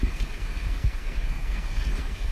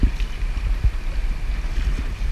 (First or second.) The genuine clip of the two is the second